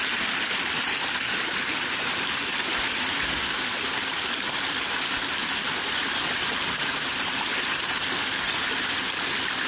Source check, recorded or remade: recorded